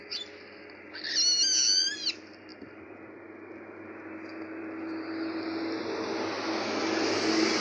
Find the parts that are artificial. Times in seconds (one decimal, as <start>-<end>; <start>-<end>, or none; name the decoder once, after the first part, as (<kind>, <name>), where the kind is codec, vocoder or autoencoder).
none